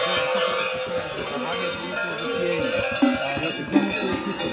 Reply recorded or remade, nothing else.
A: recorded